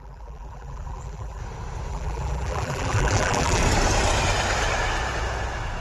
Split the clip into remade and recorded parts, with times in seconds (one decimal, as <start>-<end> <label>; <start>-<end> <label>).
0.0-1.4 remade; 1.4-1.9 recorded; 1.9-3.6 remade; 3.6-5.8 recorded